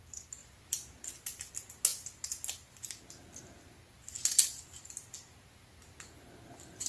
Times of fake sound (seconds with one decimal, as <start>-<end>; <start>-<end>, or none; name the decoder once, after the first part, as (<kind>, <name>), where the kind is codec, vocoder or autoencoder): none